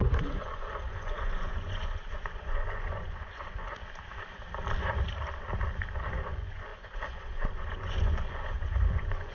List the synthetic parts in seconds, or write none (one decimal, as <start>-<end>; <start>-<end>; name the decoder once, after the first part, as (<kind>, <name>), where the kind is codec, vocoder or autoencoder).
0.0-3.8 (vocoder, Vocos); 6.2-9.3

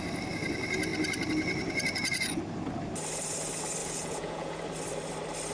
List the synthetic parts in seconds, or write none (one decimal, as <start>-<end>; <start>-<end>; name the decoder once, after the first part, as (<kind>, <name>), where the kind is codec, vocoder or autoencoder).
3.8-4.6 (vocoder, Vocos)